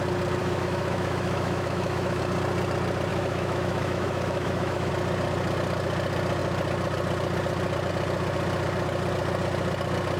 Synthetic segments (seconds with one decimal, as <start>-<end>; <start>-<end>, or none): 0.4-2.2; 3.1-4.9